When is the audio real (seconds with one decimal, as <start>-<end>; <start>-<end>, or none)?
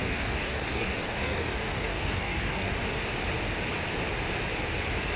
2.7-5.2